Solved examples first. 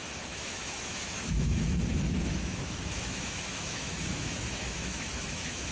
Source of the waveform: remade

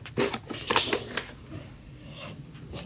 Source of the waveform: recorded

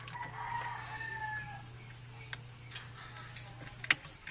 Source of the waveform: recorded